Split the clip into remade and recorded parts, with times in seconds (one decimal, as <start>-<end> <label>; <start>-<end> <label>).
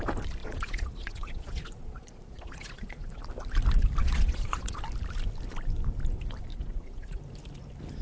0.0-0.4 recorded; 0.4-3.2 remade; 3.2-4.0 recorded; 4.0-4.8 remade; 4.8-6.5 recorded; 6.5-7.2 remade; 7.2-8.0 recorded